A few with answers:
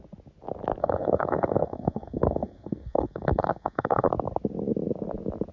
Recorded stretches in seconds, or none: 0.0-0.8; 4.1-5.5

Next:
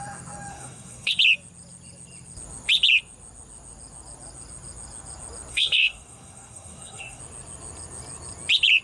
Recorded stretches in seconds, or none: 0.0-0.5; 1.1-5.5; 7.2-8.8

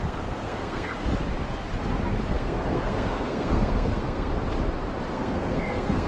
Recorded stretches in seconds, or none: 0.9-2.3; 4.3-5.1

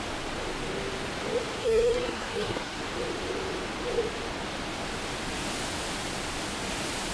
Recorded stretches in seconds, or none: 0.0-1.6; 2.8-7.1

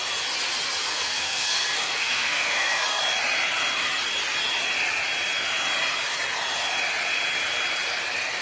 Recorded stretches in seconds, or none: 0.0-0.8; 3.0-8.4

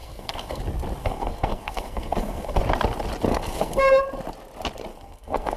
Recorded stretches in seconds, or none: 0.6-1.0; 2.6-3.3; 4.0-4.9

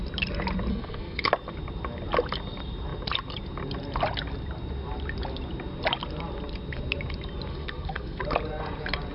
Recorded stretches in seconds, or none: 0.0-0.7; 1.3-7.5; 8.2-9.1